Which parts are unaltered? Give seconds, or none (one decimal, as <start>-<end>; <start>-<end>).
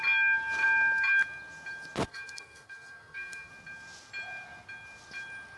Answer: 0.0-2.1; 3.5-5.6